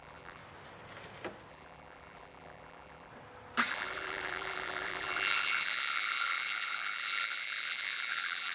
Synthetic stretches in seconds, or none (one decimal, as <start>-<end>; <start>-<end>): 0.0-0.4; 1.5-3.1; 3.7-8.5